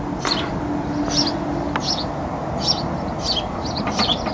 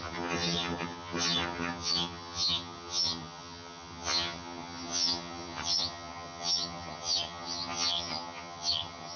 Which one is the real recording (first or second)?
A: first